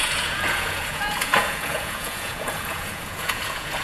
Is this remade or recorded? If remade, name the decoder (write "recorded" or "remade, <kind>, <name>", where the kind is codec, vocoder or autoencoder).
remade, vocoder, Vocos